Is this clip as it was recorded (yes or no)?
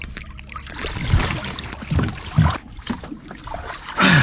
yes